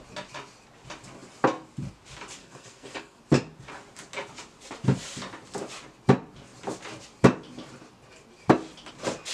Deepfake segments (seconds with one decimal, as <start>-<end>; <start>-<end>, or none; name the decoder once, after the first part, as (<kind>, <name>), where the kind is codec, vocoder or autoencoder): 2.4-3.2 (codec, SNAC)